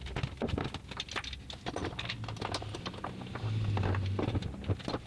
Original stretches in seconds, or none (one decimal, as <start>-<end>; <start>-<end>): 0.0-5.1